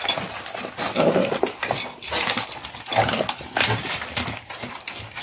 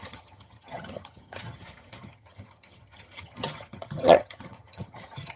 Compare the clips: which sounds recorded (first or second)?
first